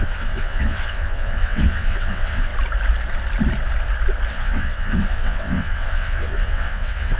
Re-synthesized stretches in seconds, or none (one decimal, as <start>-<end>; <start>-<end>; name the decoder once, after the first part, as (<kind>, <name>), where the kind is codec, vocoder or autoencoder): 0.0-2.5 (vocoder, WaveNeXt); 4.3-7.2